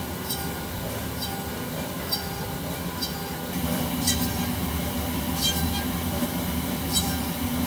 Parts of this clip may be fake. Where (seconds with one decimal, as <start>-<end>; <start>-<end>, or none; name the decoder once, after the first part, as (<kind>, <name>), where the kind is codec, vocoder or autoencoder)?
none